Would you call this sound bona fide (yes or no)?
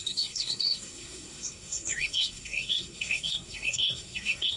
no